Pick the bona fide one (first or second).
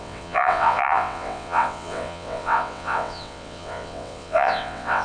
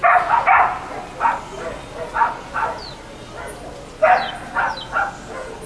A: second